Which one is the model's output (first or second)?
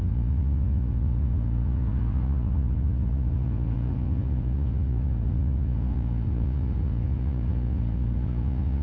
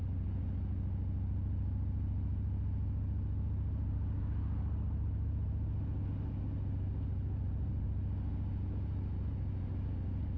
first